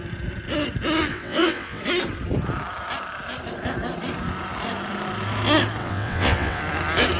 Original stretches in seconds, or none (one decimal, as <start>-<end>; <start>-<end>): 0.0-1.1; 1.8-5.8; 6.6-7.2